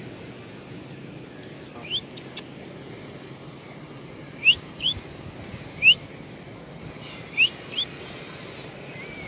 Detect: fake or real real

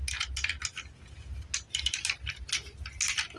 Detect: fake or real real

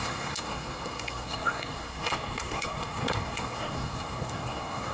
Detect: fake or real fake